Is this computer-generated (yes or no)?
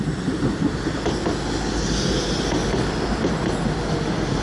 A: no